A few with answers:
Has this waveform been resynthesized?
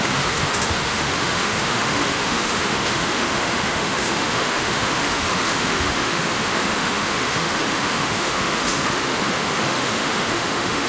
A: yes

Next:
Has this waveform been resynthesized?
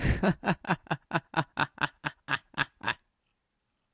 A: no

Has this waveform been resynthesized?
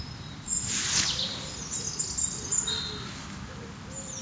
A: no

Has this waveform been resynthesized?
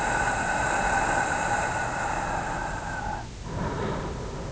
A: no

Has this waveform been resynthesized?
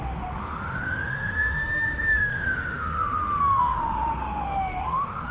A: yes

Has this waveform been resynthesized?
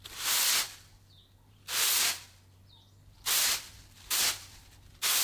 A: yes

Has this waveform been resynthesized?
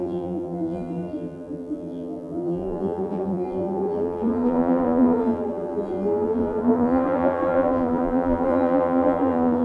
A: yes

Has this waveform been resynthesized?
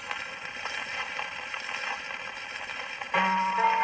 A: no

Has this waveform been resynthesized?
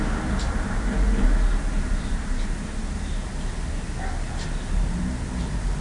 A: no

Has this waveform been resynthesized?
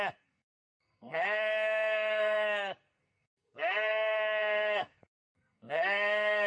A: yes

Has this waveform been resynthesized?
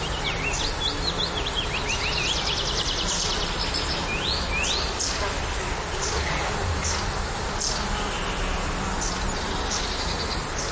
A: no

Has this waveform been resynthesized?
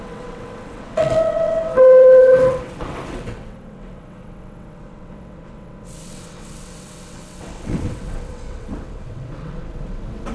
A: yes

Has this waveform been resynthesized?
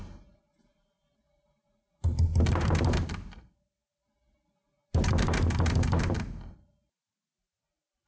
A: no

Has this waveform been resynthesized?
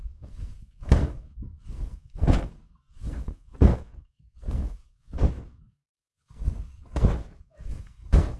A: yes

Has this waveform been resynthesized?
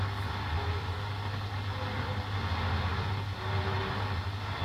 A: no